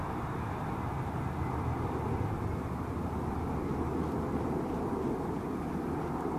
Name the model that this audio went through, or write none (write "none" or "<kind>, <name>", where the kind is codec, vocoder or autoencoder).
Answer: none